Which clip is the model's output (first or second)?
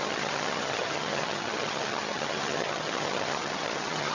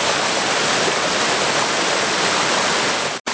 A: first